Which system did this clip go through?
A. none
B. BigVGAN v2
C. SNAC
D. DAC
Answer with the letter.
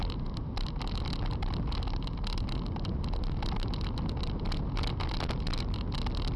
A